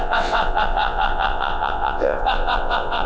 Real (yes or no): no